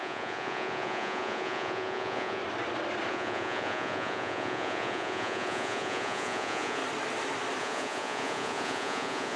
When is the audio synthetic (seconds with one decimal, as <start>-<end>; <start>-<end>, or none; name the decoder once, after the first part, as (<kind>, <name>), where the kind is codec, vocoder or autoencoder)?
0.0-2.4 (vocoder, Vocos); 3.1-6.8; 7.6-9.4